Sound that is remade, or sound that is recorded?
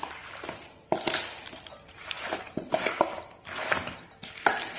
recorded